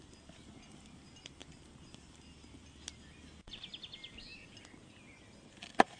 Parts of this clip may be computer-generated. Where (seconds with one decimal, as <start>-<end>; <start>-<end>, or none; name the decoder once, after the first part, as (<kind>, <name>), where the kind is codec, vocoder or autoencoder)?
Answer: none